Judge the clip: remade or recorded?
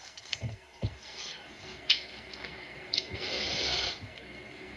remade